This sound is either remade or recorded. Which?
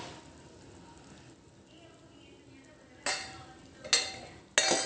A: recorded